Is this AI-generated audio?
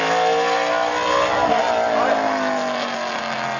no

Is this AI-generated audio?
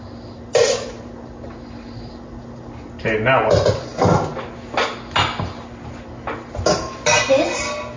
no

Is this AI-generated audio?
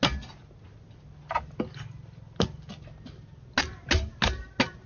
no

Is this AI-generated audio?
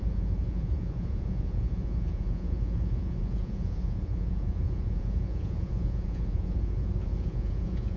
yes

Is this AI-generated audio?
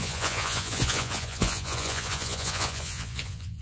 yes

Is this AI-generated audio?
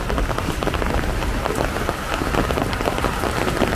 no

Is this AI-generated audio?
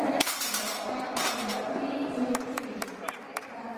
yes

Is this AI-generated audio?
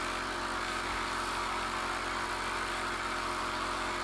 no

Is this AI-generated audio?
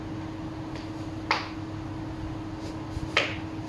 no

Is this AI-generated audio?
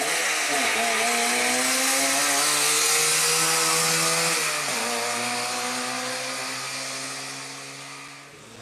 no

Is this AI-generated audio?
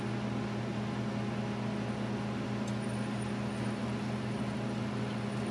no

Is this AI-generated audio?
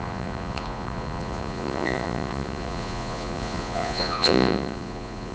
yes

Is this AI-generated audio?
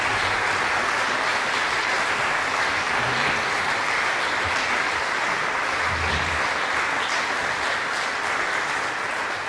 no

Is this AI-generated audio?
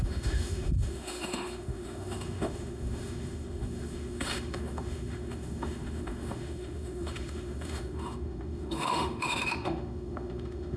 yes